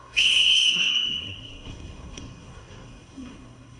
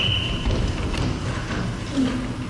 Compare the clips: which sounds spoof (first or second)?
first